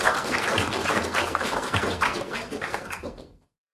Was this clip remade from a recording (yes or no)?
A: yes